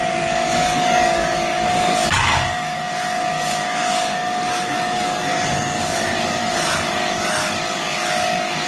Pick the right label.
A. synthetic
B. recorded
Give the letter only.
A